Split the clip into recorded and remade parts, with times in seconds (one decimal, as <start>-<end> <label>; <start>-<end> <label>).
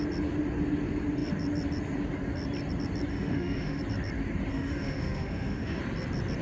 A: 0.0-3.1 recorded; 3.1-3.8 remade; 3.8-4.5 recorded; 4.5-5.8 remade; 5.8-6.4 recorded